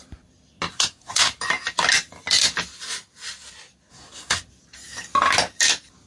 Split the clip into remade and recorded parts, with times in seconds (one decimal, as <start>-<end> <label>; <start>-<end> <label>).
0.0-0.7 recorded; 0.7-1.3 remade; 1.3-3.9 recorded; 3.9-4.4 remade; 4.4-6.1 recorded